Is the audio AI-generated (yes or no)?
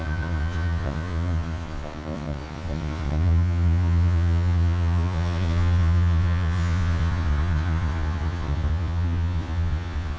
yes